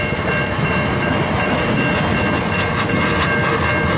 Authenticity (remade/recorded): recorded